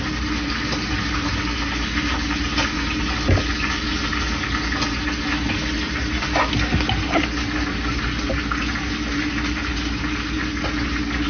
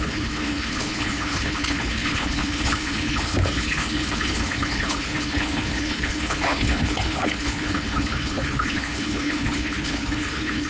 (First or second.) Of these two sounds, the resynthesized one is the second